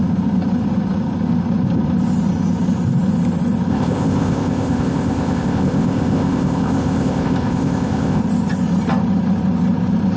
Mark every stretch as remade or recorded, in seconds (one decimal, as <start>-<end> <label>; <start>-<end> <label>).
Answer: 0.0-3.7 recorded; 3.7-8.2 remade; 8.2-10.2 recorded